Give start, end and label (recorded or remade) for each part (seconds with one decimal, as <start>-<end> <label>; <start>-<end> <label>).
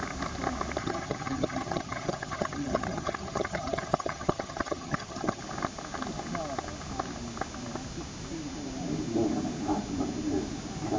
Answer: 0.0-0.8 recorded; 0.8-5.4 remade; 5.4-11.0 recorded